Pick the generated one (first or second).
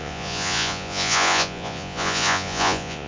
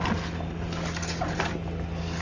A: first